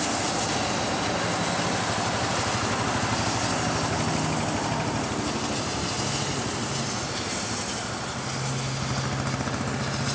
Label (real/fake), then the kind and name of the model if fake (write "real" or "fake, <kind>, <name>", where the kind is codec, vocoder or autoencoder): real